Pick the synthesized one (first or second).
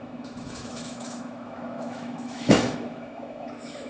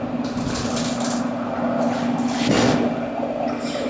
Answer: first